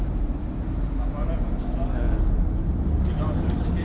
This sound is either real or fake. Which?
real